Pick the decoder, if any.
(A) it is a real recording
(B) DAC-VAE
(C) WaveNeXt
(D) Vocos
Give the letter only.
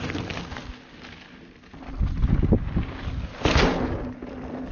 A